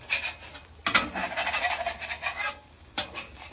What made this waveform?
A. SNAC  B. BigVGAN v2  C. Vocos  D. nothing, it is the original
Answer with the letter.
D